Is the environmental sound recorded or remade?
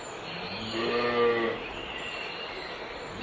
recorded